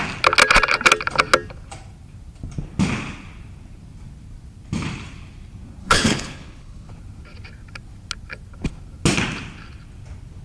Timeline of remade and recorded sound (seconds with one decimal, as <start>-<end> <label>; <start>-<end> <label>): 0.0-5.8 recorded; 5.8-6.9 remade; 6.9-10.4 recorded

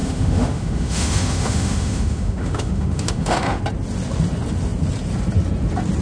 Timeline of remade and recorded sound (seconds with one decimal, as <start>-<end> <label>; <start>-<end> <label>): 0.0-3.6 remade; 3.6-6.0 recorded

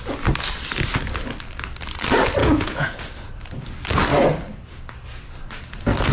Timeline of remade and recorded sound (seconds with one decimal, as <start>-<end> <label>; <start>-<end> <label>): 0.0-2.4 recorded; 2.4-3.0 remade; 3.0-6.1 recorded

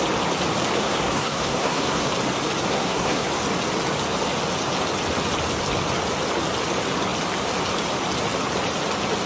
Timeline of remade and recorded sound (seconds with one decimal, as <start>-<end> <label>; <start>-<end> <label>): 0.0-0.8 recorded; 0.8-2.1 remade; 2.1-2.7 recorded; 2.7-3.3 remade; 3.3-9.3 recorded

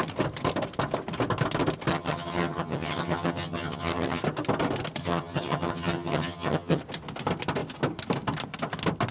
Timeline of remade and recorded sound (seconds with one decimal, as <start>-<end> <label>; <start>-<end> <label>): 0.0-1.9 recorded; 1.9-4.2 remade; 4.2-5.0 recorded; 5.0-6.8 remade; 6.8-9.1 recorded

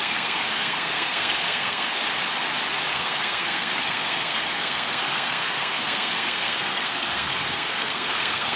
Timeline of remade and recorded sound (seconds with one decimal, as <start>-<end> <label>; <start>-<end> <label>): 0.0-2.0 remade; 2.0-2.9 recorded; 2.9-8.6 remade